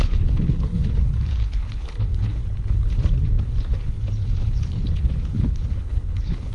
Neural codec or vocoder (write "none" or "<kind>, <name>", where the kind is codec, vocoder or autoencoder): codec, HILCodec